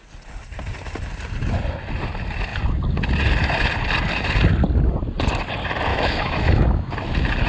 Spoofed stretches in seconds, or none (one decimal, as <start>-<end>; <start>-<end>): 5.9-6.9